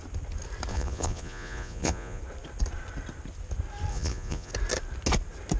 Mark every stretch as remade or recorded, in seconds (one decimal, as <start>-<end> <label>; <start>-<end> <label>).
0.0-0.7 recorded; 0.7-2.2 remade; 2.2-3.9 recorded; 3.9-4.5 remade; 4.5-5.6 recorded